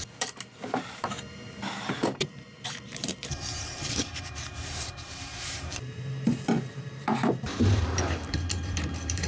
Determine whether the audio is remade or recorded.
remade